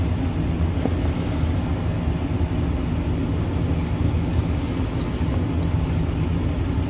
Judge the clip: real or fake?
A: real